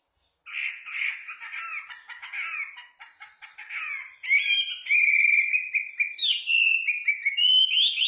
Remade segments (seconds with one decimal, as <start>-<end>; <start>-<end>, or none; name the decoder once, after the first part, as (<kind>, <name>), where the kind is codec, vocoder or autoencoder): none